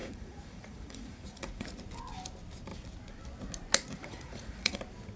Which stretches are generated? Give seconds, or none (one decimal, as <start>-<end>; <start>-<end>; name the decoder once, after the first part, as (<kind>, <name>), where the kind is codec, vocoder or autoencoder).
0.0-1.8 (vocoder, Vocos); 3.9-4.8